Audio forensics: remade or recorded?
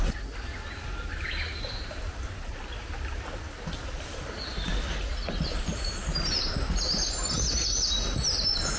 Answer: recorded